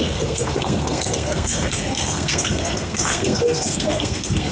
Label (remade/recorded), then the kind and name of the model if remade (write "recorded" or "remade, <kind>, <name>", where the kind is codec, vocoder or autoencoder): remade, codec, SNAC